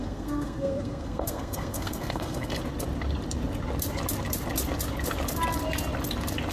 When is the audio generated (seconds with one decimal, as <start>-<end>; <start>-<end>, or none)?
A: 0.0-2.5